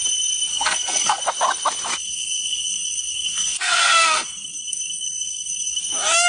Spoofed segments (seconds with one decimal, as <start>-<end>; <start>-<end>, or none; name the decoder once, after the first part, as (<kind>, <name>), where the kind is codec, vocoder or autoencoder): 0.5-1.2 (codec, SNAC); 2.0-5.8